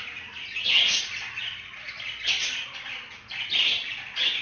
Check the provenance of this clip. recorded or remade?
recorded